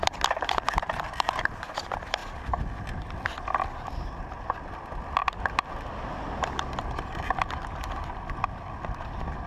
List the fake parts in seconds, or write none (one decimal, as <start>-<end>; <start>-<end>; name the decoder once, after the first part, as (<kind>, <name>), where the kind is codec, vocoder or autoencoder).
0.0-2.2 (vocoder, BigVGAN v2); 4.2-5.2